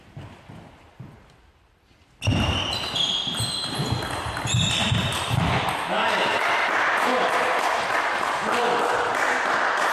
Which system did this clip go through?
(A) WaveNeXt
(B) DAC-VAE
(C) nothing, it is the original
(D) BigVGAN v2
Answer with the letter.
C